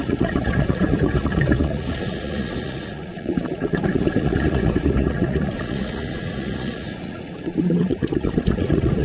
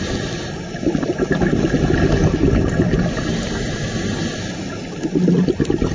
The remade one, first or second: first